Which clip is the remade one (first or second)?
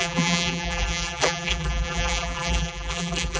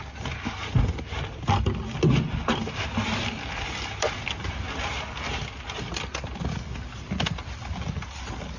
first